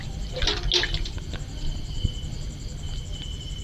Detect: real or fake real